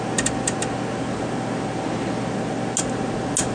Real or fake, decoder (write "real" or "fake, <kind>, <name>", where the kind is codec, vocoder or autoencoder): real